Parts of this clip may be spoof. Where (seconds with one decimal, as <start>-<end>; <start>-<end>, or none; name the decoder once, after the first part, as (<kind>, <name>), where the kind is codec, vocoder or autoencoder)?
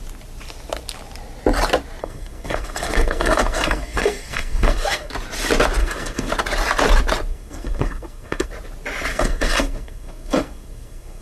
2.0-5.1 (codec, SNAC); 5.8-6.3; 7.3-8.5; 9.1-11.2